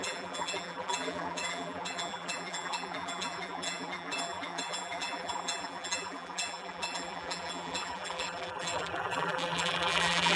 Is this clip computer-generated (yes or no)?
yes